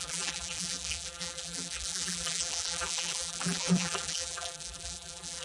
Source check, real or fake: fake